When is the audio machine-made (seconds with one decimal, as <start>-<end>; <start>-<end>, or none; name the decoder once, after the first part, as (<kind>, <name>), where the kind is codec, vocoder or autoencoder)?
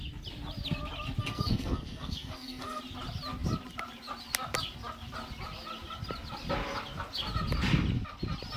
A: 1.2-2.8 (codec, SNAC)